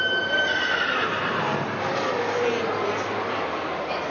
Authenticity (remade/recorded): recorded